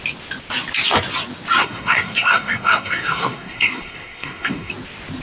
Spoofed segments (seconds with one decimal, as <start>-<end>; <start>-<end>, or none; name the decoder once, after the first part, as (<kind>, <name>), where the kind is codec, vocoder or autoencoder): 1.6-4.7 (codec, SNAC)